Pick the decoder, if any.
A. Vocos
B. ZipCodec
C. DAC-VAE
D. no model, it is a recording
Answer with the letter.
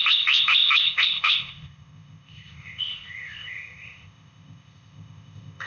B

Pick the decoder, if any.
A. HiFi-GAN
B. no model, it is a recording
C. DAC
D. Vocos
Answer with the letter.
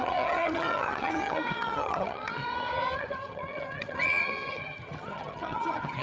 A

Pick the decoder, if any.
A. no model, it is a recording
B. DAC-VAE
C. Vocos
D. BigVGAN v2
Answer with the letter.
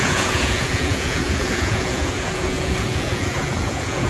C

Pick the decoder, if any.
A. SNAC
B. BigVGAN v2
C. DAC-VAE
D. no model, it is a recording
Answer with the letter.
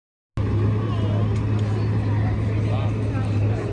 D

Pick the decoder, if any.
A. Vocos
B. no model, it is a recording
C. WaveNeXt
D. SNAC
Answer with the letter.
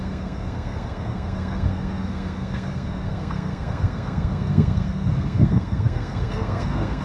D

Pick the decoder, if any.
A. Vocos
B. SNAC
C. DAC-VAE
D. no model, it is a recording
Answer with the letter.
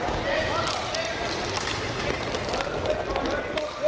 D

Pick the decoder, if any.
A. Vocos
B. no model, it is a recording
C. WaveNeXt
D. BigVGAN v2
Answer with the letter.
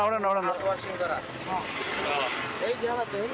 B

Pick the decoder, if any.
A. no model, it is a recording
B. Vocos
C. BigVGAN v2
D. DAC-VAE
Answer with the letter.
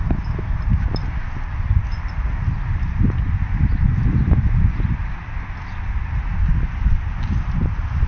A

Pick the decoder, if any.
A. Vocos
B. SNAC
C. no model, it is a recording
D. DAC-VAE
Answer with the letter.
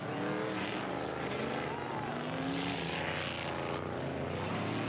C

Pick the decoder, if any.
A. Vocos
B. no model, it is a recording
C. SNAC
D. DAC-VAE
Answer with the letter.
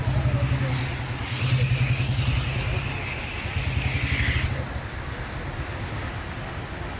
B